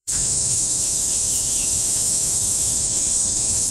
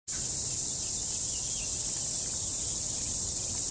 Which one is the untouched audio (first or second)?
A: second